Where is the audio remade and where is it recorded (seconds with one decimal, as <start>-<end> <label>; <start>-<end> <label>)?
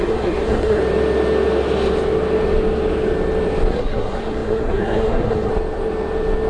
0.0-0.8 remade; 0.8-3.7 recorded; 3.7-5.5 remade; 5.5-6.5 recorded